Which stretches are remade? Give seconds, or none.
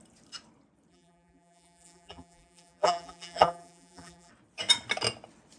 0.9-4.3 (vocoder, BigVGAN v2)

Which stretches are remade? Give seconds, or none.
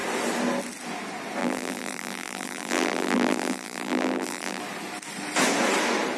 1.4-4.6 (vocoder, BigVGAN v2)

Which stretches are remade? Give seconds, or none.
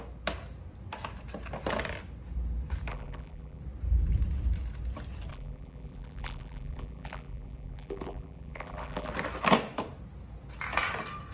2.9-3.6 (vocoder, BigVGAN v2); 5.3-9.1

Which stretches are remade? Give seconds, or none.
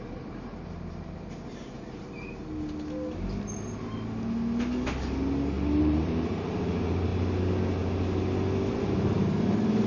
0.0-2.4 (vocoder, BigVGAN v2); 5.8-7.1; 8.8-9.9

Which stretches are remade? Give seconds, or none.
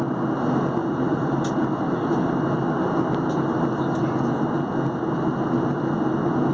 0.8-2.4 (vocoder, BigVGAN v2)